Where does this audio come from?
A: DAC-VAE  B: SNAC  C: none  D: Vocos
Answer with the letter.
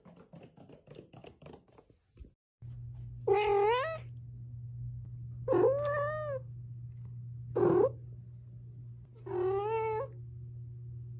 C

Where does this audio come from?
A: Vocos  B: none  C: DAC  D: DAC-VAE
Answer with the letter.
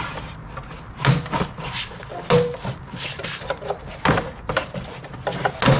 B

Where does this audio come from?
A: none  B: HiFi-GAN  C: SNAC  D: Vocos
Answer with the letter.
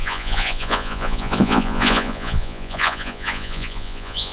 D